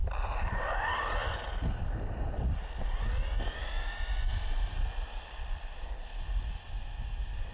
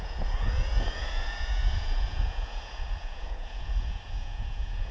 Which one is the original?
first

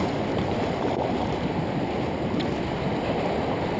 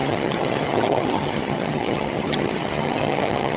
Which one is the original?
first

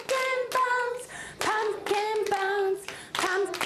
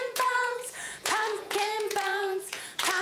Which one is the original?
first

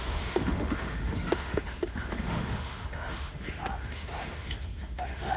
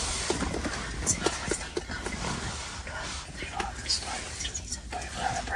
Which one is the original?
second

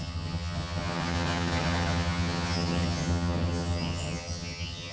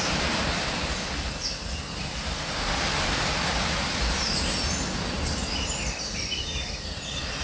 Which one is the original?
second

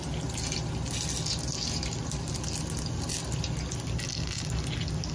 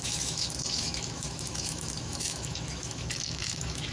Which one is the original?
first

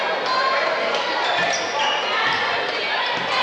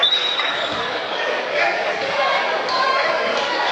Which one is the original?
first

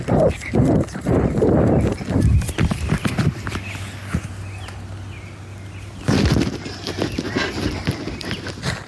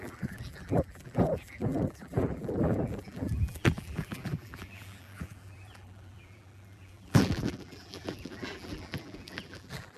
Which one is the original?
first